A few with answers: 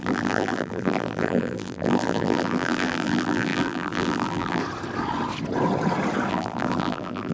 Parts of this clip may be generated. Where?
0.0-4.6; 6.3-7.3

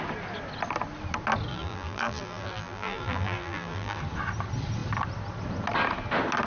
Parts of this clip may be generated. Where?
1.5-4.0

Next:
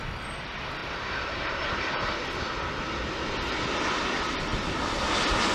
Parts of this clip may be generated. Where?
0.8-1.6; 4.5-5.1

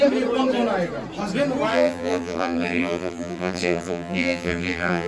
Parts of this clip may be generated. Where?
1.7-5.1